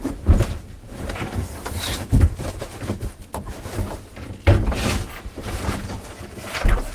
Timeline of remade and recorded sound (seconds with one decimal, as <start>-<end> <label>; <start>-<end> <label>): 0.0-3.2 remade; 3.2-5.2 recorded; 5.2-6.9 remade